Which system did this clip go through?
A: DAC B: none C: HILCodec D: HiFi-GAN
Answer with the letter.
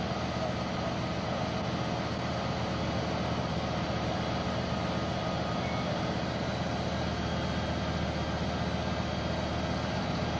B